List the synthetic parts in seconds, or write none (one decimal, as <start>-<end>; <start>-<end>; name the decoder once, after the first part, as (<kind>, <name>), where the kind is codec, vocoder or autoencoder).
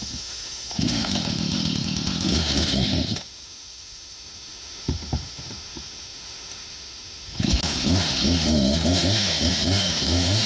0.0-10.5 (autoencoder, DAC-VAE)